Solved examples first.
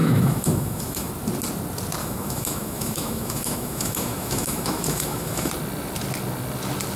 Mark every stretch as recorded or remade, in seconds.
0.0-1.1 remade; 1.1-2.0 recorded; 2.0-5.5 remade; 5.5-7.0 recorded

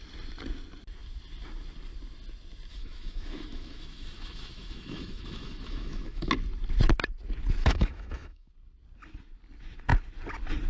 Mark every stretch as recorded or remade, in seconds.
0.0-2.7 recorded; 2.7-6.3 remade; 6.3-7.6 recorded; 7.6-8.5 remade; 8.5-10.7 recorded